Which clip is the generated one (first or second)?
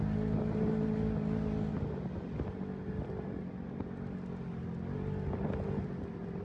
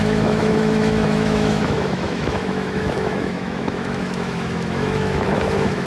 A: second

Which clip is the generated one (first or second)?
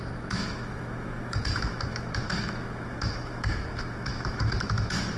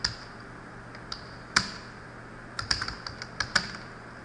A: first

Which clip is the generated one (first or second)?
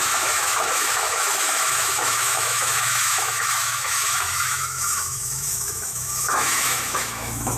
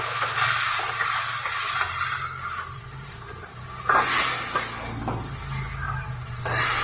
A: first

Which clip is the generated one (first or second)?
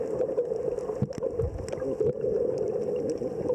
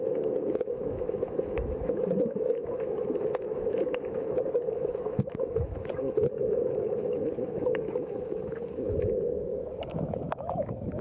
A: second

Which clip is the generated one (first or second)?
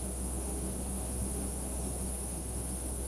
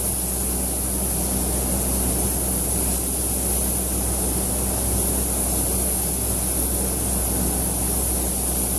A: first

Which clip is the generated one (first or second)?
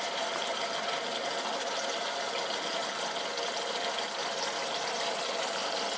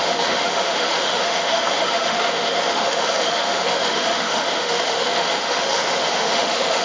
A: second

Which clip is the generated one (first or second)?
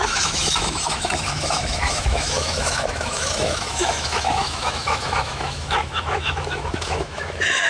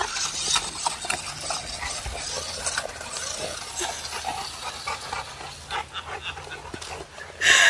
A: first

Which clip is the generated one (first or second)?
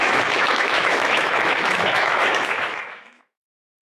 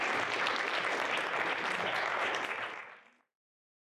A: first